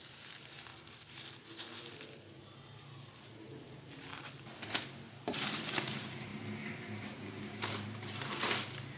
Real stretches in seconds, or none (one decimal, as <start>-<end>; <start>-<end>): 0.7-2.4; 4.1-5.1; 6.3-6.8